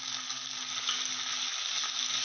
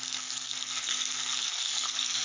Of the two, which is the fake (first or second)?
second